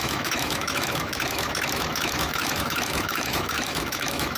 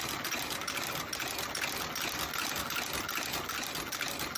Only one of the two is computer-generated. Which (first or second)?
first